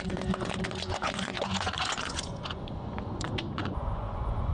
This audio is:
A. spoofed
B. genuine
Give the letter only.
A